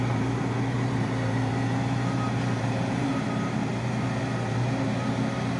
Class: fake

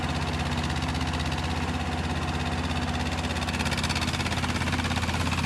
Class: real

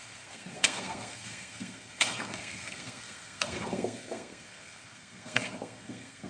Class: fake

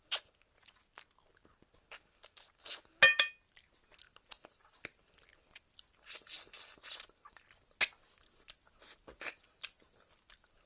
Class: real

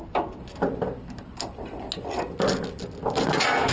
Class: real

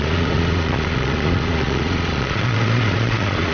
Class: fake